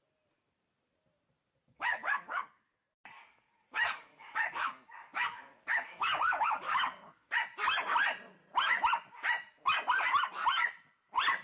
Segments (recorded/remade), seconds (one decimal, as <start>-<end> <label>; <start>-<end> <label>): 0.0-1.7 recorded; 1.7-2.9 remade; 2.9-3.3 recorded; 3.3-7.3 remade; 7.3-11.4 recorded

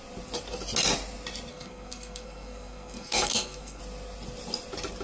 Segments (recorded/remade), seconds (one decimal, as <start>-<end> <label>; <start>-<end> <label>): 0.0-1.5 recorded; 1.5-3.8 remade; 3.8-5.0 recorded

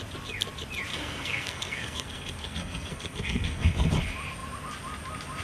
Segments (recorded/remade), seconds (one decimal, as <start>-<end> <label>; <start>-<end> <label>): 0.0-0.9 recorded; 0.9-3.9 remade; 3.9-5.4 recorded

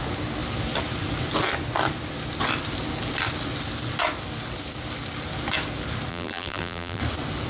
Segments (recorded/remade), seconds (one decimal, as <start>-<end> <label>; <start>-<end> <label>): 0.0-6.1 recorded; 6.1-7.0 remade; 7.0-7.5 recorded

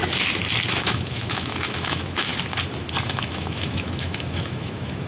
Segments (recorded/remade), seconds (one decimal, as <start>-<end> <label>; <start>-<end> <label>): 0.0-0.7 recorded; 0.7-2.3 remade; 2.3-3.1 recorded; 3.1-5.1 remade

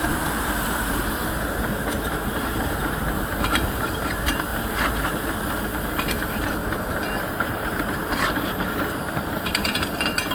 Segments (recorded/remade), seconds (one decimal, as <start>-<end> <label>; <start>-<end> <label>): 0.0-6.6 remade; 6.6-7.3 recorded; 7.3-10.3 remade

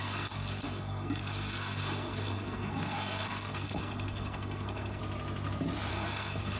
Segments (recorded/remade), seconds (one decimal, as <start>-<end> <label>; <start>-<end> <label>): 0.0-5.0 remade; 5.0-5.9 recorded; 5.9-6.6 remade